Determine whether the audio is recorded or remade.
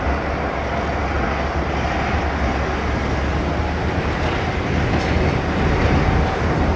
recorded